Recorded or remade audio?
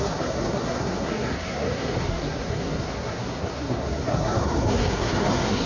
remade